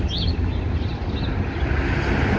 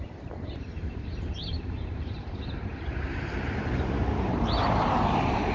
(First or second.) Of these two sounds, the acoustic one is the first